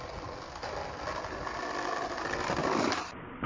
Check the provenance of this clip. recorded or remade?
recorded